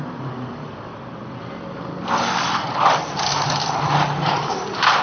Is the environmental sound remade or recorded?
remade